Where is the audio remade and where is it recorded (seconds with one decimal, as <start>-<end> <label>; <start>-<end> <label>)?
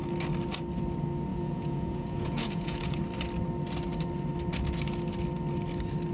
0.0-1.3 recorded; 1.3-3.0 remade; 3.0-6.1 recorded